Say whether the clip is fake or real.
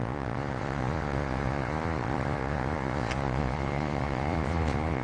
fake